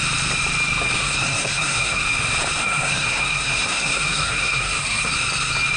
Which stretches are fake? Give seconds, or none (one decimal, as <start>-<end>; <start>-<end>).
1.0-2.0; 2.6-5.1